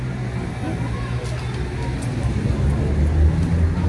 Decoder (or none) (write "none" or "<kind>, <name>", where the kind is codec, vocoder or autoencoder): none